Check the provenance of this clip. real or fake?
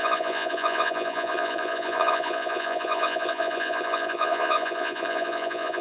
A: fake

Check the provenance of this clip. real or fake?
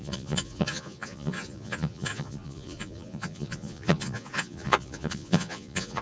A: fake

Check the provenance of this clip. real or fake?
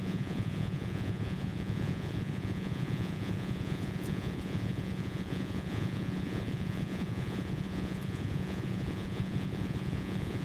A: fake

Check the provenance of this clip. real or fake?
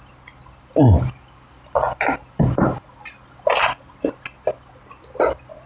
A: real